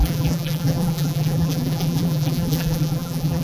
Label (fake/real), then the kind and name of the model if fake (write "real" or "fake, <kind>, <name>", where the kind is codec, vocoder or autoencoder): fake, vocoder, BigVGAN v2